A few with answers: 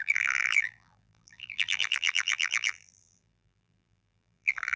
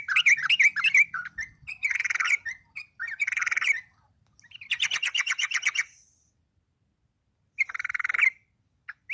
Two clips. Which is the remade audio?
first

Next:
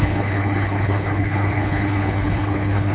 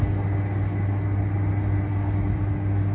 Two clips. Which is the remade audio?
first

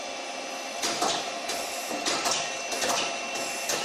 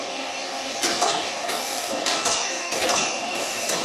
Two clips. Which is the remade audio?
second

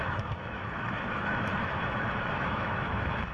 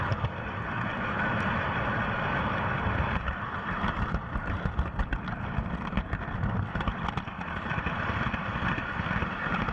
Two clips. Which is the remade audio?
first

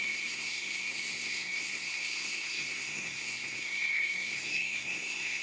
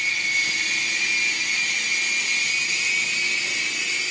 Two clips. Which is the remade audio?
first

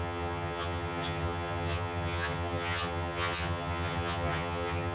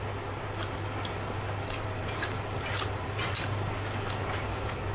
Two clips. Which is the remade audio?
first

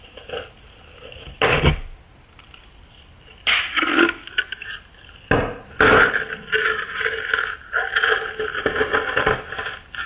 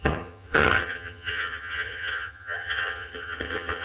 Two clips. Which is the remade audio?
second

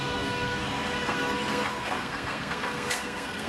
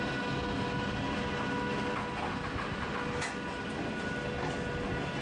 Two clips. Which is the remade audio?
first